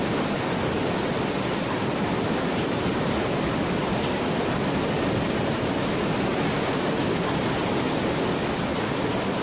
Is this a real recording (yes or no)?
yes